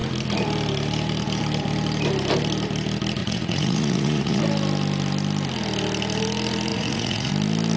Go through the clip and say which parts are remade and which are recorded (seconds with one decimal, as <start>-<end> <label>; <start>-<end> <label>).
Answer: 0.0-3.2 recorded; 3.2-4.4 remade; 4.4-6.7 recorded; 6.7-7.3 remade; 7.3-7.8 recorded